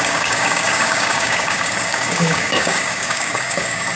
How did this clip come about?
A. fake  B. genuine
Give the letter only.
A